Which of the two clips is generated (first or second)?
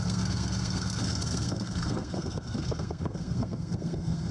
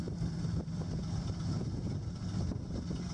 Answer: first